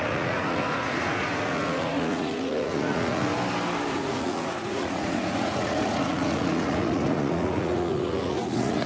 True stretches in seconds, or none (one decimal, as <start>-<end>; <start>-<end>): 3.3-3.9